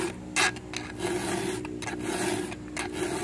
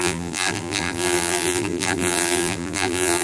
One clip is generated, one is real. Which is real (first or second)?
first